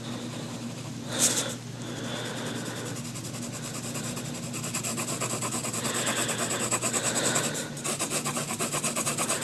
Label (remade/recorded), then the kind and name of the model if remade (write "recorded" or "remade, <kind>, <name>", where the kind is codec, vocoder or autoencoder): recorded